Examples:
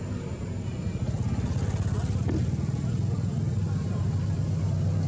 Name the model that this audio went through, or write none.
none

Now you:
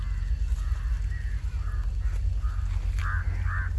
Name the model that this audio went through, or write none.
none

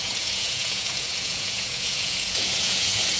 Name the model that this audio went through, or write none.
vocoder, Vocos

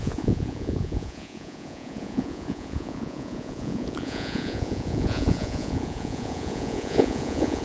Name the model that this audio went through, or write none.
vocoder, Vocos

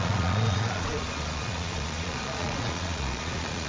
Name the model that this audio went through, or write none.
vocoder, Vocos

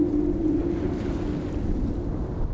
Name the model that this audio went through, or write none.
none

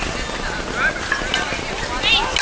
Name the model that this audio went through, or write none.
none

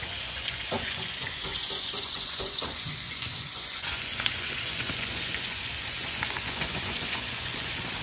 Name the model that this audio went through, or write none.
vocoder, Vocos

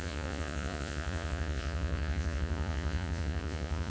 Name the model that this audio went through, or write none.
vocoder, Vocos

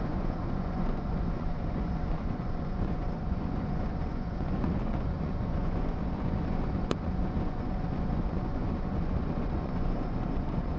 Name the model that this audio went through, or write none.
vocoder, Vocos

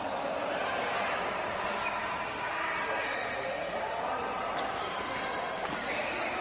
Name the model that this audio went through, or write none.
none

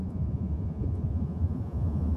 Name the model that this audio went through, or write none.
vocoder, Vocos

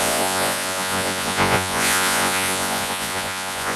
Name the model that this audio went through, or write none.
vocoder, Vocos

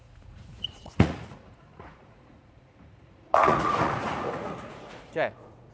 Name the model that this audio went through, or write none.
vocoder, Vocos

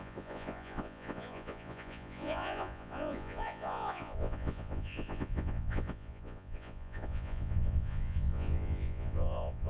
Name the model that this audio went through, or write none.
vocoder, Vocos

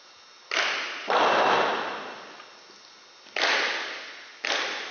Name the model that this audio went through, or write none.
none